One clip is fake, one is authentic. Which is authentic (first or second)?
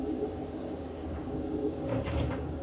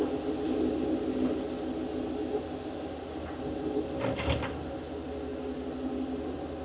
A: second